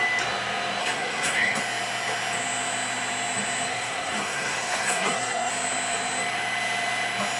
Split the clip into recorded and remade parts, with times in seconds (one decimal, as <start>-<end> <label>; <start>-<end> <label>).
0.0-0.8 recorded; 0.8-1.6 remade; 1.6-3.7 recorded; 3.7-5.5 remade; 5.5-7.4 recorded